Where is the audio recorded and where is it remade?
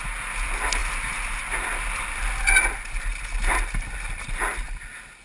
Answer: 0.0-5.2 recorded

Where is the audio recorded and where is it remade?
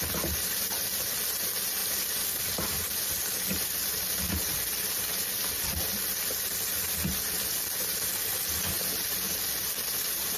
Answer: 0.0-10.4 recorded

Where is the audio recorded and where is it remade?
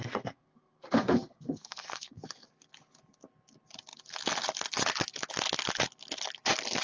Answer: 0.0-2.5 remade; 2.5-6.8 recorded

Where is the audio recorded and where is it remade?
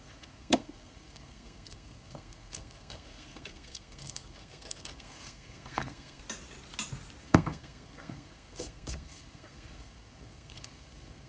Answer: 0.0-6.2 remade; 6.2-7.2 recorded; 7.2-11.3 remade